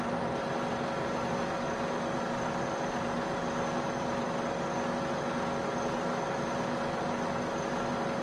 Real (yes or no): yes